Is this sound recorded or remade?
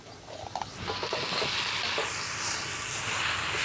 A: recorded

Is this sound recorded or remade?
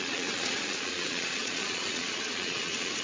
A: remade